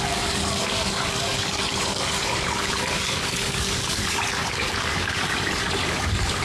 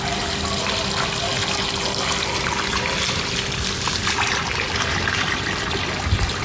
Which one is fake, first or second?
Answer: first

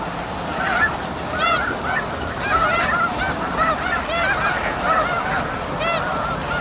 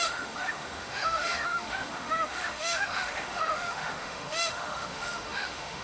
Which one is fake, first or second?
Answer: second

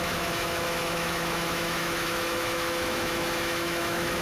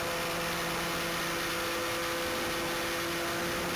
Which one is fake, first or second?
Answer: first